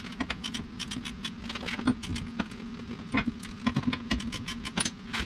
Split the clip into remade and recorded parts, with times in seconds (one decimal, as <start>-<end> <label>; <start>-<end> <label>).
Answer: 0.0-5.3 recorded